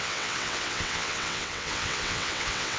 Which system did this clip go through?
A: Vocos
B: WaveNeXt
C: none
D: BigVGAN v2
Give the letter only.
B